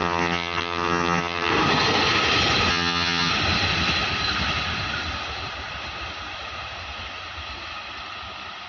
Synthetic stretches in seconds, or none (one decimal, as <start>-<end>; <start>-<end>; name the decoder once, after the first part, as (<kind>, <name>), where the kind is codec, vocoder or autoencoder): 0.0-1.5 (vocoder, HiFi-GAN); 2.7-3.3

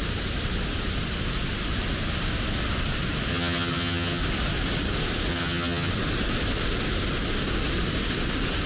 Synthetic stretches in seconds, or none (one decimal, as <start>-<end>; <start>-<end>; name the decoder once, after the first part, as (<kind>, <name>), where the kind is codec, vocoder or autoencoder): 3.3-4.2 (vocoder, HiFi-GAN); 5.3-5.9